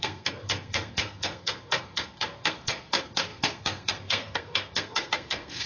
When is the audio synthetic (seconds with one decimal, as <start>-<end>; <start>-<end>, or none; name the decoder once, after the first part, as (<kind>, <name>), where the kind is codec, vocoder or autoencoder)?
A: 0.0-5.7 (codec, SNAC)